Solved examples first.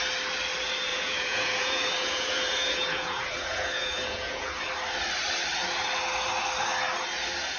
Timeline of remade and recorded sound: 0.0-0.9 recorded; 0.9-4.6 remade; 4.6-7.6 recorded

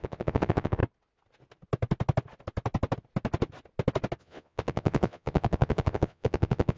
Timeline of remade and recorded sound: 0.0-0.8 remade; 0.8-4.2 recorded; 4.2-6.8 remade

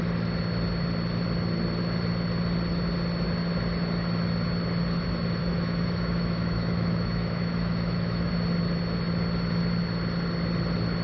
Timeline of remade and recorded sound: 0.0-5.4 recorded; 5.4-8.3 remade; 8.3-11.0 recorded

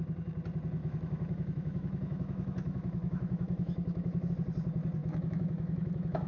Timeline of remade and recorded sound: 0.0-0.8 recorded; 0.8-4.3 remade; 4.3-5.0 recorded; 5.0-6.3 remade

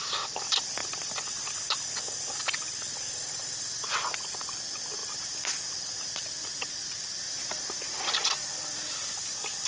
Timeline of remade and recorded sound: 0.0-5.0 remade; 5.0-5.6 recorded; 5.6-9.7 remade